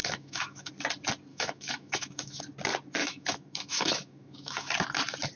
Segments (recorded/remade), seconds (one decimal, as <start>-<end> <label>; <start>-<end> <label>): 0.0-0.7 remade; 0.7-1.3 recorded; 1.3-2.4 remade; 2.4-3.0 recorded; 3.0-4.7 remade; 4.7-5.4 recorded